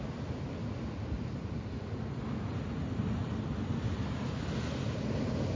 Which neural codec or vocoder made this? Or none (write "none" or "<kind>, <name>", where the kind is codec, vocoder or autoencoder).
none